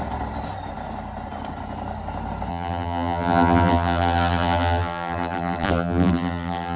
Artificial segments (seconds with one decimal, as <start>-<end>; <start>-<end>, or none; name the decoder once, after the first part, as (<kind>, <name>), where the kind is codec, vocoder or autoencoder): 2.5-6.8 (vocoder, BigVGAN v2)